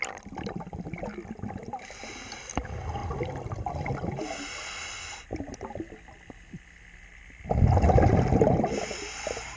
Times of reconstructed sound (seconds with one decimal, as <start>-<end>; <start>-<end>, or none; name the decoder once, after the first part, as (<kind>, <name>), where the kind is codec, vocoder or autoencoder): none